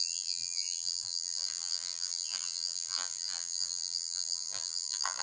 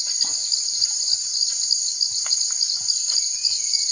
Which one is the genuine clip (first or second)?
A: second